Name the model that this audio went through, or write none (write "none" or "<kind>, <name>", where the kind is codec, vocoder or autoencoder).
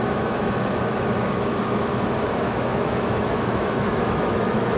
autoencoder, DAC-VAE